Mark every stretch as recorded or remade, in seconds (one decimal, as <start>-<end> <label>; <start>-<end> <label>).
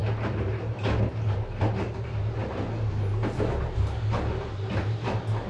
0.0-5.5 recorded